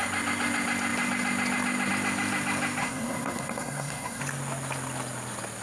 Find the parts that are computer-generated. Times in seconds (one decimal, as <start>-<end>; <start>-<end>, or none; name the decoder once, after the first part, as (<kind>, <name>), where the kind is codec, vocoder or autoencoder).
2.8-4.2 (codec, SNAC)